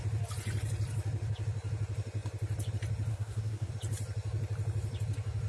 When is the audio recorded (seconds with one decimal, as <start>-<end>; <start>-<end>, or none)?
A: 0.0-3.1; 3.7-5.5

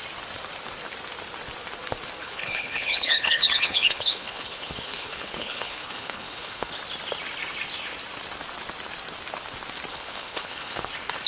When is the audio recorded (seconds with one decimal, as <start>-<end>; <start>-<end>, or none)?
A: 0.0-2.2; 6.7-9.9; 10.9-11.3

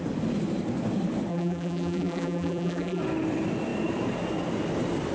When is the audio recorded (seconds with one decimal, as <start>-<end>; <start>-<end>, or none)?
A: 0.0-1.3; 3.0-5.1

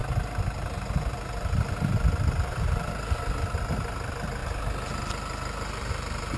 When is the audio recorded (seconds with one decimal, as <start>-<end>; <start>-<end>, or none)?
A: 0.0-6.4

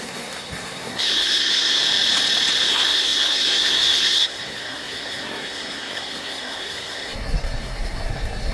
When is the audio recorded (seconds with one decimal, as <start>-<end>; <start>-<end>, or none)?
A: 1.8-2.7

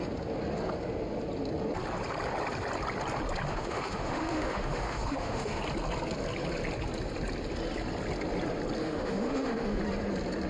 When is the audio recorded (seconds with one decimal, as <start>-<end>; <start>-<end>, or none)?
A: 0.0-3.5; 5.6-8.8; 9.8-10.5